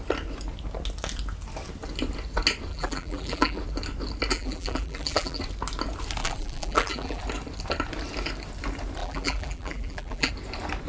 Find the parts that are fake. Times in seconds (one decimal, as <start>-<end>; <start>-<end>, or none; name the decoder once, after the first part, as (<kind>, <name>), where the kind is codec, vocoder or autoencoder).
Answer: 2.7-3.6 (vocoder, BigVGAN v2); 4.3-5.4; 6.2-7.2; 9.0-10.3